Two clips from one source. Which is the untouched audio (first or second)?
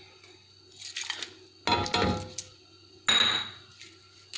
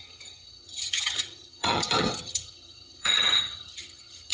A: first